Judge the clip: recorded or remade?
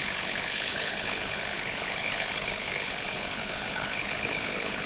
remade